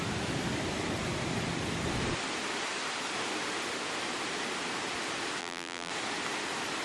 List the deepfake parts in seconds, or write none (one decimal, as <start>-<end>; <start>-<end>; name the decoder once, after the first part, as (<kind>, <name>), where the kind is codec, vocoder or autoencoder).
5.4-5.9 (vocoder, BigVGAN v2)